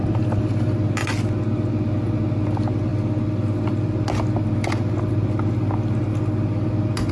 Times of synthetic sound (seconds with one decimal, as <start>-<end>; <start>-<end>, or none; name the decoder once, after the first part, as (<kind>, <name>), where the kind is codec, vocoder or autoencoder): none